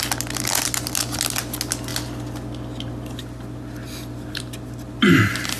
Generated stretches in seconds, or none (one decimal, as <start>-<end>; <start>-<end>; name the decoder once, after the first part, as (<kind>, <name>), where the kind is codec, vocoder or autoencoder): none